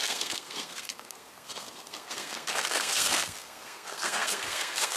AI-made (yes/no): yes